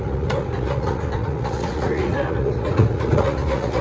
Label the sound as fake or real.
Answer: fake